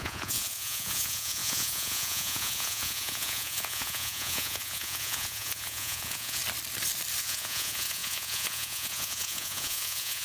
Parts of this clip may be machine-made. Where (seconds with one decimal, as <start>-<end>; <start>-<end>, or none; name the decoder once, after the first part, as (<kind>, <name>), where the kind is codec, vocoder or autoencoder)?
0.0-6.4 (vocoder, Vocos); 7.2-10.2